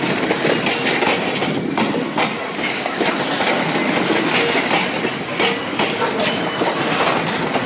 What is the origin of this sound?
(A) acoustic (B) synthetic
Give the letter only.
A